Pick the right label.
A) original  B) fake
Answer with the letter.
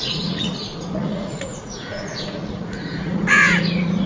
B